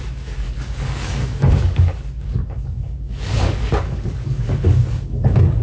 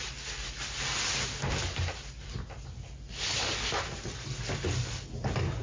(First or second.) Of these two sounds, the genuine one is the second